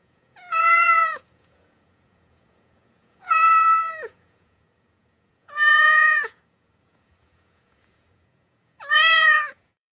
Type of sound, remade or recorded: remade